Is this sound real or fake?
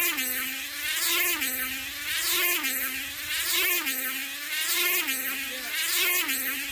real